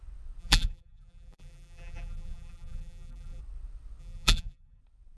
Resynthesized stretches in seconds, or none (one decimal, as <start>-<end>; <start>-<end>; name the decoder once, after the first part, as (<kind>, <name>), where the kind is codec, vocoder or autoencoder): 0.4-3.4 (vocoder, BigVGAN v2); 4.0-4.8